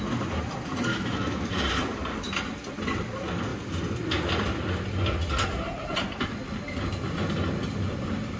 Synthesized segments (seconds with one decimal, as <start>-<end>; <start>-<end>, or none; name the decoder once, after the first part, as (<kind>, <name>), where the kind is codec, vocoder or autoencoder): 0.9-1.5 (autoencoder, DAC-VAE)